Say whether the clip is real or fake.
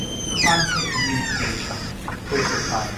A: real